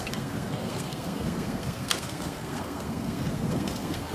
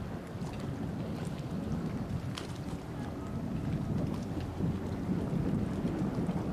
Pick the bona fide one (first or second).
second